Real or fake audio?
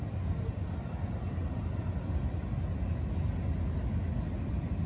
real